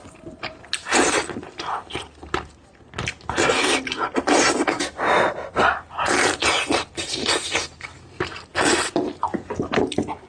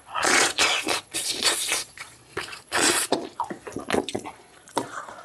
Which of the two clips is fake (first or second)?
second